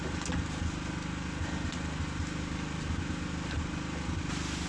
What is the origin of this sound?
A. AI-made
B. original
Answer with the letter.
B